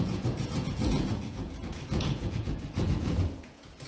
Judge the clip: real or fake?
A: fake